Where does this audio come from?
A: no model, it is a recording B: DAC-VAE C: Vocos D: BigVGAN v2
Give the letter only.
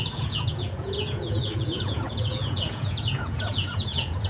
C